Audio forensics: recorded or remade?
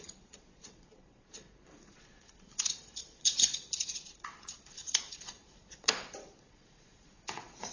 remade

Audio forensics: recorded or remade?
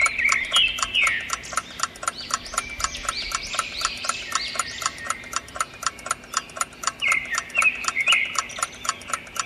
recorded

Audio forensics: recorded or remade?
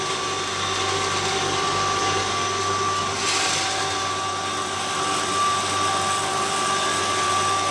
recorded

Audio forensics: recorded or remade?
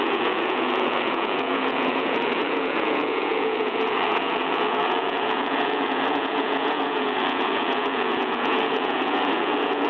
remade